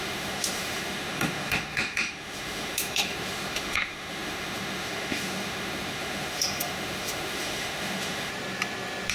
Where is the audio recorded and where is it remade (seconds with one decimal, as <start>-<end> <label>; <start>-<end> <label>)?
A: 0.0-8.3 remade; 8.3-9.1 recorded